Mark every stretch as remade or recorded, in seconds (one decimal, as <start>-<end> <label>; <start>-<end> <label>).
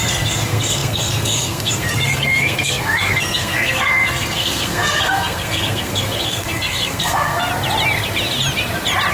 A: 0.0-7.5 remade; 7.5-9.1 recorded